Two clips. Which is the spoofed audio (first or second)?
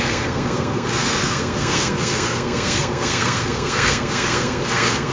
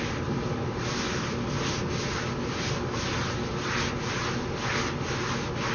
first